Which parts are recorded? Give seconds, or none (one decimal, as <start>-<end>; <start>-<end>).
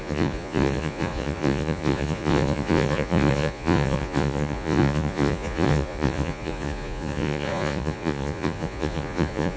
none